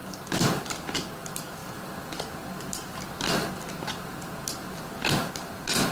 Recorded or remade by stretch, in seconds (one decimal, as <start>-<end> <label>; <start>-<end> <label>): 0.0-5.9 recorded